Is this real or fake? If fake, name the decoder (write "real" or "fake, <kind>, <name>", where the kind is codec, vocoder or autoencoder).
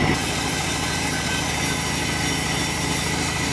fake, vocoder, BigVGAN v2